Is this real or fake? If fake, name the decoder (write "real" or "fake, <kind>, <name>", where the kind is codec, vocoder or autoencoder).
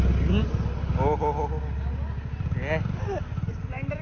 real